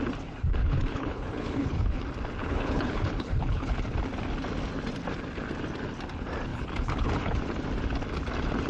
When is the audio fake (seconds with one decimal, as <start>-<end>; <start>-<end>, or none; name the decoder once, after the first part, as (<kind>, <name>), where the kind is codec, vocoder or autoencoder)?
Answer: 0.6-2.0 (codec, HILCodec); 2.4-3.8; 6.5-7.4